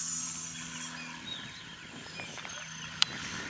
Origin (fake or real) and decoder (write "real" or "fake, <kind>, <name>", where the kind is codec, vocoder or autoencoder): real